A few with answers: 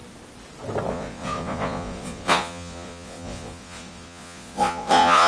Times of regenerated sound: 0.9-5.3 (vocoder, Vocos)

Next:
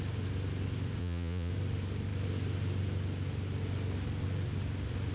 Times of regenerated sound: 1.0-1.5 (vocoder, Vocos)

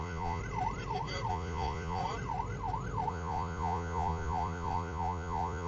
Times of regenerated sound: 0.0-0.4 (vocoder, Vocos); 1.3-2.0; 3.1-5.7

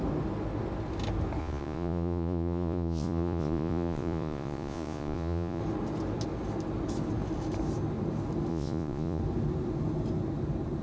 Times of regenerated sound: 1.4-5.6 (vocoder, Vocos); 8.5-9.2

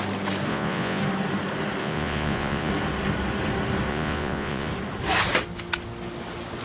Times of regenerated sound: 0.5-1.0 (vocoder, Vocos); 1.8-2.7; 3.9-4.7